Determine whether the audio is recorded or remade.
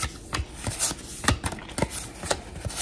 recorded